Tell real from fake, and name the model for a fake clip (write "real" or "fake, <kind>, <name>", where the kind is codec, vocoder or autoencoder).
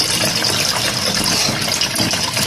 real